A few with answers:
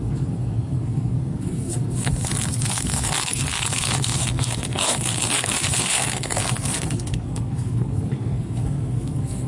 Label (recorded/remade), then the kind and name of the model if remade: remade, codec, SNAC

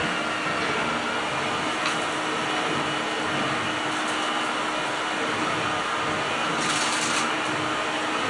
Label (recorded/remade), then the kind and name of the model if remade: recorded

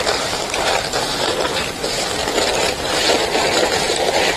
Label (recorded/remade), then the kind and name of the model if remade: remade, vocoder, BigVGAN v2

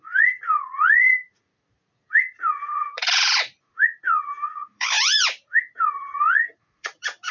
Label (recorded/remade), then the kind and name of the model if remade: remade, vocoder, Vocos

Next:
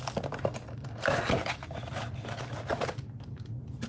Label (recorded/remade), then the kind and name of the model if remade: recorded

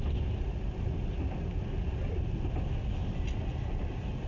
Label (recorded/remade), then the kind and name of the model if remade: recorded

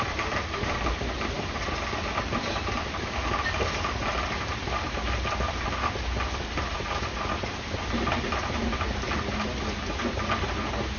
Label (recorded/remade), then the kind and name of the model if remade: recorded